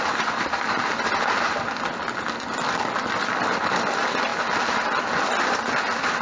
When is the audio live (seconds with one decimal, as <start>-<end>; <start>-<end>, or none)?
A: 0.0-6.2